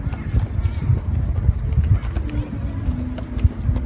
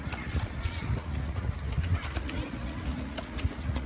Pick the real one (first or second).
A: first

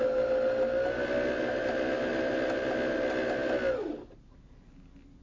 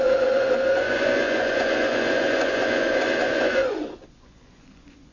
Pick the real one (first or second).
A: first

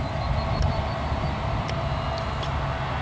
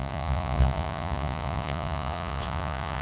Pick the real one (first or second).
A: first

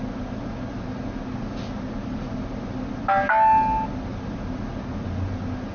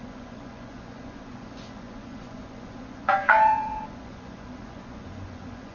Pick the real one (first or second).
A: first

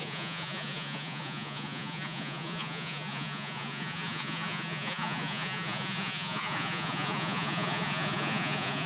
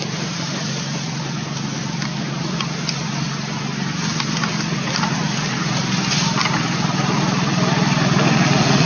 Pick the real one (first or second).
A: second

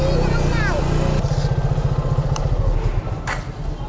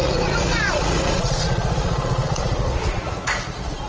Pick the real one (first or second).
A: first